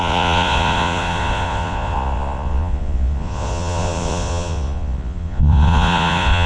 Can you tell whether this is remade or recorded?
remade